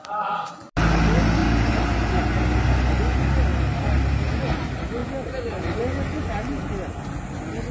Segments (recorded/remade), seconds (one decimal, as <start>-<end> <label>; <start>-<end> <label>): 0.0-3.5 recorded; 3.5-4.3 remade; 4.3-7.7 recorded

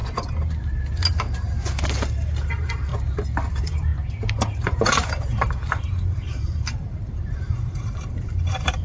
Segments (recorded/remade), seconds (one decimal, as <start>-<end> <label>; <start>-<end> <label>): 0.0-1.9 recorded; 1.9-2.9 remade; 2.9-3.5 recorded; 3.5-3.9 remade; 3.9-4.5 recorded; 4.5-8.8 remade

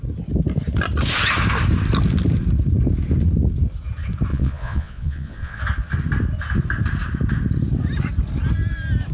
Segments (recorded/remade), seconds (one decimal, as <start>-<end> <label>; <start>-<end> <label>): 0.0-4.3 recorded; 4.3-5.6 remade; 5.6-9.1 recorded

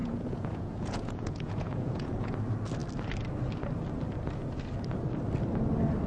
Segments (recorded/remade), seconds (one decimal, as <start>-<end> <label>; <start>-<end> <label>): 0.0-2.3 remade; 2.3-6.1 recorded